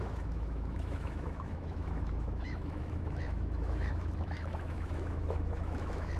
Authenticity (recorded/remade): remade